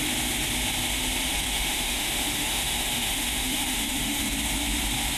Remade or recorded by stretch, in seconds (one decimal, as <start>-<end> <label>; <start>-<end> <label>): 0.0-1.2 recorded; 1.2-4.3 remade; 4.3-5.2 recorded